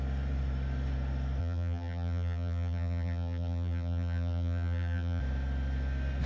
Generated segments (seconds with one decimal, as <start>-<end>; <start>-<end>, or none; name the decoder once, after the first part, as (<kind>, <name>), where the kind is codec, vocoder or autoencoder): 1.4-5.2 (vocoder, BigVGAN v2)